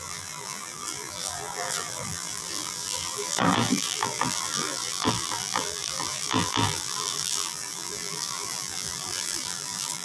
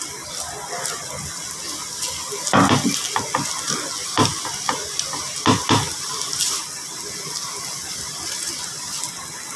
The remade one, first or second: first